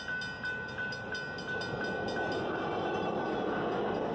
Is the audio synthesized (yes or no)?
no